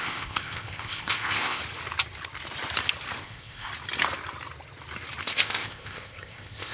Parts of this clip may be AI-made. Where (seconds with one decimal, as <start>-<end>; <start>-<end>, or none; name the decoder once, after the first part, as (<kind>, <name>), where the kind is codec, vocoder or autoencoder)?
0.0-1.6 (codec, ZipCodec); 3.2-3.7; 5.2-6.7